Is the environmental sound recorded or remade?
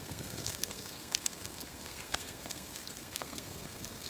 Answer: remade